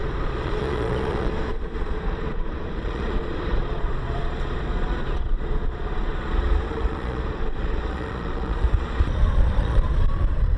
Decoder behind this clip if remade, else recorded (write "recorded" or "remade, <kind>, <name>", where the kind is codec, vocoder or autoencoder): remade, vocoder, Vocos